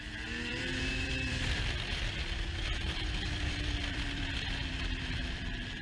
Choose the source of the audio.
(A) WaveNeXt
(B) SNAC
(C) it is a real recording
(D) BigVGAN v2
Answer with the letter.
D